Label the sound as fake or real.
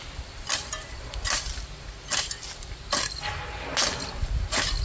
real